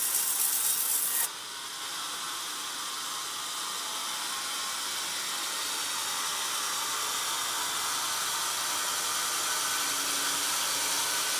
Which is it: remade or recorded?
recorded